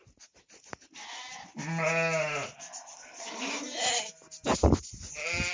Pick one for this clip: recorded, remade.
recorded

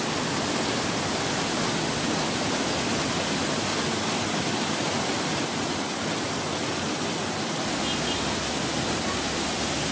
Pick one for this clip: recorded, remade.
recorded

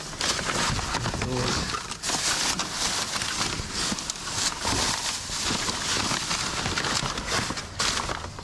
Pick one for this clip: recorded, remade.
recorded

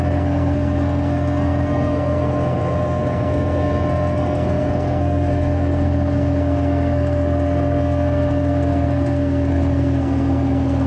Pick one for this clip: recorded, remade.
remade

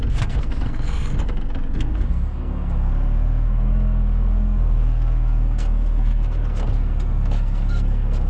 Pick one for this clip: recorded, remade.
remade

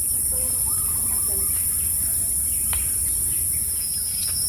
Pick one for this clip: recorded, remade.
remade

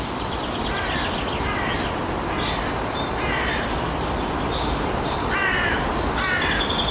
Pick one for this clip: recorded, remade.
recorded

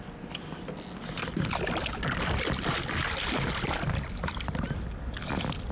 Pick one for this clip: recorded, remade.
recorded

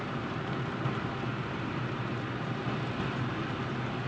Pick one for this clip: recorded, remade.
recorded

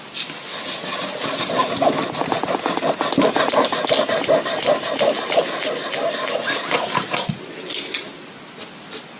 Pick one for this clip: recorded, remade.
recorded